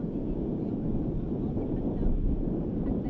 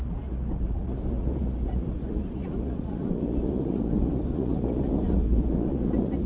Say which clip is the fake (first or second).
second